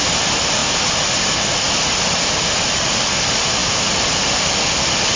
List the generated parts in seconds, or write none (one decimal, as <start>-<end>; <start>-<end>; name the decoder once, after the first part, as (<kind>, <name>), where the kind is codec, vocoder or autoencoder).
none